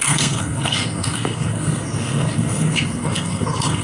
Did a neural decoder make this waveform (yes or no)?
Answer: yes